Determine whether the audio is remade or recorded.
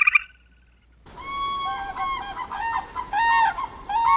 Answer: recorded